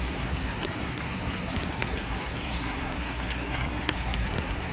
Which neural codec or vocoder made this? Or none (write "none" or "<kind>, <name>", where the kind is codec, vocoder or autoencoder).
codec, SNAC